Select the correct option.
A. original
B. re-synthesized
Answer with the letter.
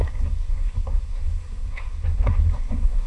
B